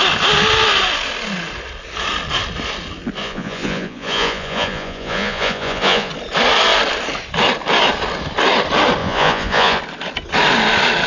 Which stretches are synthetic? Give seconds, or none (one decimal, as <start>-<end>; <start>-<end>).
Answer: 3.2-6.1; 9.0-9.8